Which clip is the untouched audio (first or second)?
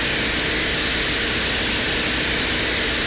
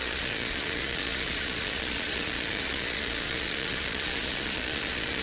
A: first